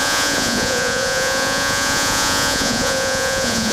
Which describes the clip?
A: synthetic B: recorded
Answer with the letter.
A